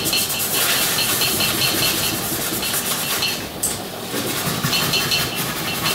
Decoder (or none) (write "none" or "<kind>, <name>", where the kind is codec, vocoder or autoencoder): none